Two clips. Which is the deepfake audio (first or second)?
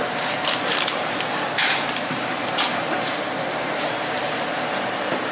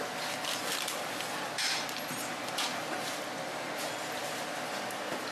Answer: first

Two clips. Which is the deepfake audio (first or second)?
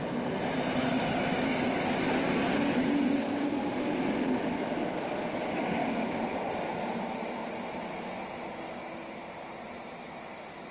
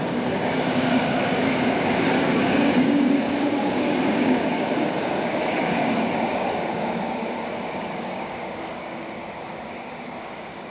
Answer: second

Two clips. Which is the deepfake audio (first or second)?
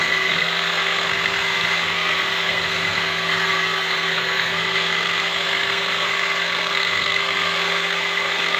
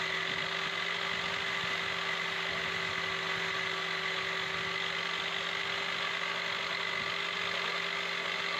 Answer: first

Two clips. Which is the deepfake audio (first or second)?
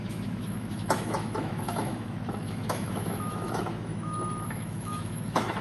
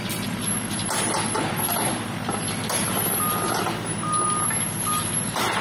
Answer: first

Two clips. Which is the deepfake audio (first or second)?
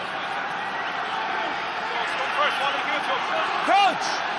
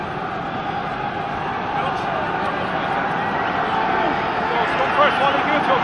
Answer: first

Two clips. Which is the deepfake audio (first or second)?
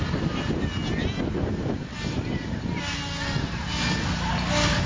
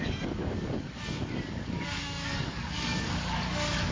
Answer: second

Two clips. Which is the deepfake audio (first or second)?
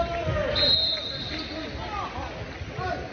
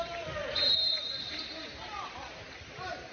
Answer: second